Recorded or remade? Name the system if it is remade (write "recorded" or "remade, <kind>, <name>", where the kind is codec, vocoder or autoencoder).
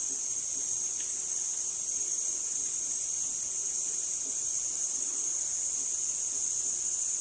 recorded